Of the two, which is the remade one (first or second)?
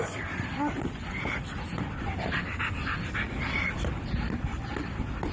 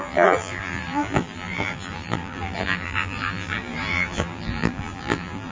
second